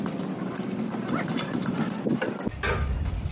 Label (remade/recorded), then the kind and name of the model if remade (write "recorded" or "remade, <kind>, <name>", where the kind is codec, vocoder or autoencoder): recorded